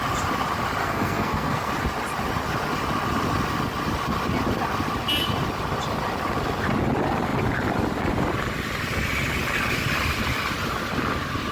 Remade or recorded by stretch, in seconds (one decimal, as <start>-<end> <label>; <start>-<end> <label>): 0.0-0.8 recorded; 0.8-1.7 remade; 1.7-11.5 recorded